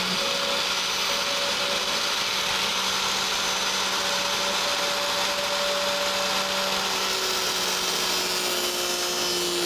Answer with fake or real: real